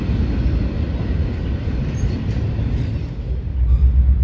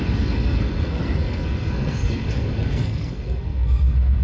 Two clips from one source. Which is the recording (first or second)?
first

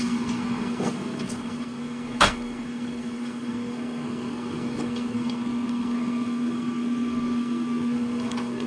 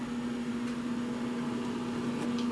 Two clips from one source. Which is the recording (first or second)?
second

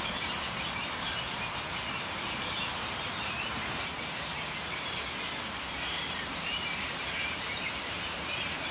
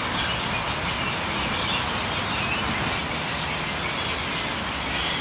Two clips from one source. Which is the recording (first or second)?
second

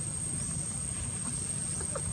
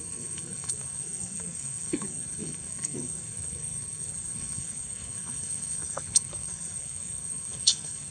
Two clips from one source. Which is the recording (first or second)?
first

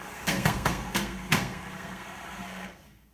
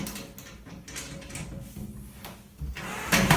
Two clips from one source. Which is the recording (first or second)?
second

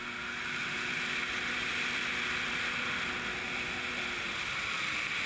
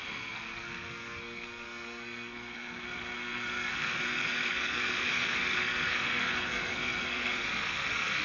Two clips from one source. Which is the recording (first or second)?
first